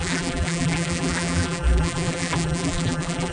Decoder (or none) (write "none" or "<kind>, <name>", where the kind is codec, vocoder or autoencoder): vocoder, BigVGAN v2